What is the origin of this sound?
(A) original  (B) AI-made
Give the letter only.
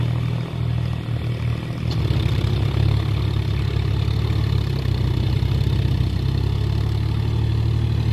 A